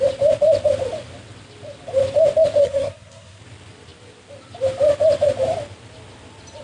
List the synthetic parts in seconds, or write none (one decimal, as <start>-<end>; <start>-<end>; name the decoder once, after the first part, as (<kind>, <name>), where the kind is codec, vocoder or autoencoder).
2.6-3.4 (codec, SNAC)